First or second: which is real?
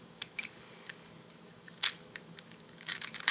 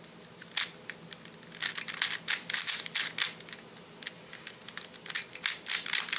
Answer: second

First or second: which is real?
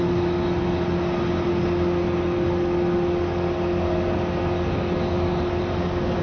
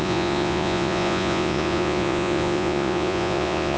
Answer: first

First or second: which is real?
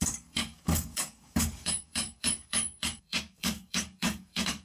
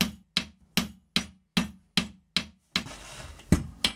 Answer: second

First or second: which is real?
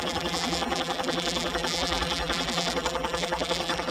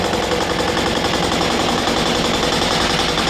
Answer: second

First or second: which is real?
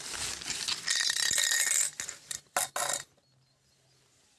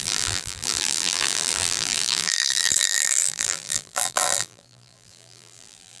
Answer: first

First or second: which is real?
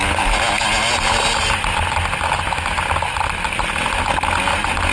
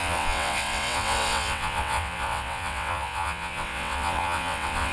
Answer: first